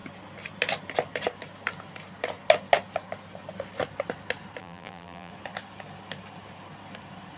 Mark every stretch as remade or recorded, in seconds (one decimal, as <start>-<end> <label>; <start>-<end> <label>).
0.0-4.6 recorded; 4.6-5.3 remade; 5.3-7.4 recorded